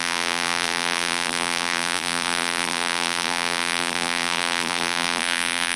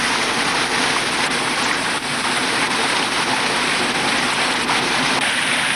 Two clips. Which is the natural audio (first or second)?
second